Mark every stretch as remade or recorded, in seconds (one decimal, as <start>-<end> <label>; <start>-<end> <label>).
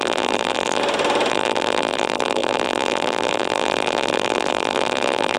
0.0-0.8 remade; 0.8-1.3 recorded; 1.3-5.4 remade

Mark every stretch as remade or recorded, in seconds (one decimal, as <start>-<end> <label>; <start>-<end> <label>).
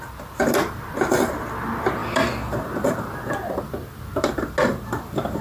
0.0-5.4 recorded